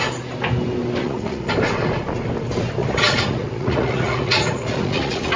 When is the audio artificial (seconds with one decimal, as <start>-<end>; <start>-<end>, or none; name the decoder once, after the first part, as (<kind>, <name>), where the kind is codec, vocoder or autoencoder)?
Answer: 1.0-1.5 (vocoder, Vocos); 2.8-5.4